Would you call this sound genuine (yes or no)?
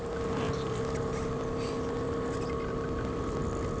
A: yes